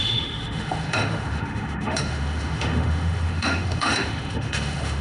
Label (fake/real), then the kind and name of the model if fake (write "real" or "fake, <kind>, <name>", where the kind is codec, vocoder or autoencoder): fake, autoencoder, DAC-VAE